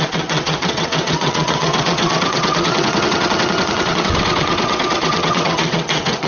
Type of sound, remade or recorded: remade